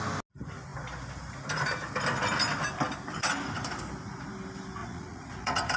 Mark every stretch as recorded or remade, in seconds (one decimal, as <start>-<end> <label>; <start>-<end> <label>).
0.0-4.8 recorded; 4.8-5.8 remade